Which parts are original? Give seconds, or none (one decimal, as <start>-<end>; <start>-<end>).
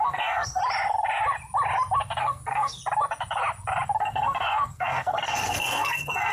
0.6-2.2; 2.8-4.0